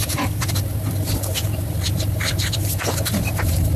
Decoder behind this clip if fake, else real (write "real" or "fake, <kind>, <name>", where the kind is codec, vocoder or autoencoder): fake, vocoder, BigVGAN v2